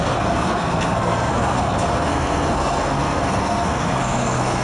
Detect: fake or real fake